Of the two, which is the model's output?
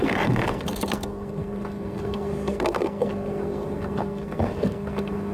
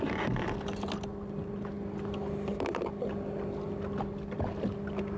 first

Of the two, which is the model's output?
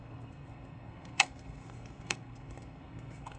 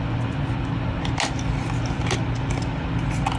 first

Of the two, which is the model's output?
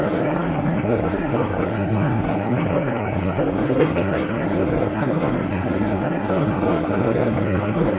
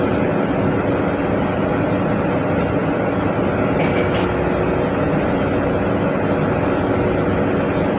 first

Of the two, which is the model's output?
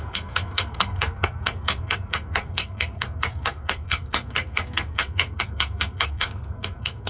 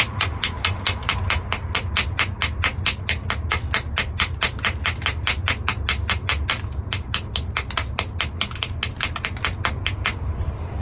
first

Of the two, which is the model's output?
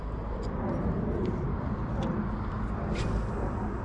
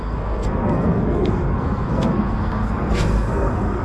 second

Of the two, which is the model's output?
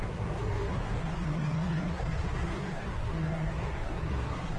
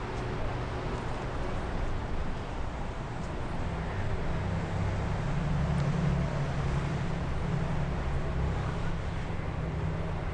first